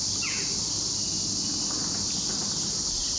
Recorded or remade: recorded